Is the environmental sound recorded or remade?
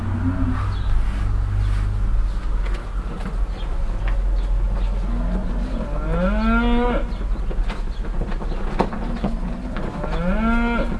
recorded